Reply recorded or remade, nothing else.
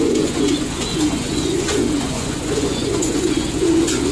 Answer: remade